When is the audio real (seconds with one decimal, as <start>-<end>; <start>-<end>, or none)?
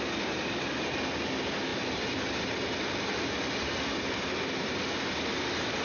0.0-5.8